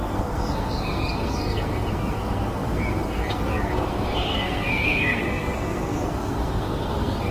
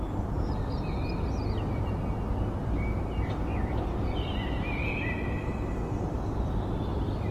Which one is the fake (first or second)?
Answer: first